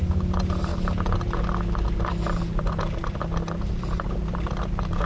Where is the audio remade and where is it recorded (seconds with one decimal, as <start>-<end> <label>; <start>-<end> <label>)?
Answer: 0.0-0.7 remade; 0.7-3.7 recorded; 3.7-5.0 remade